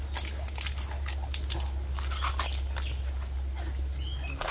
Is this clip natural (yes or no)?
yes